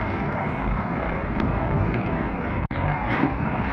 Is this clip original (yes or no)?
no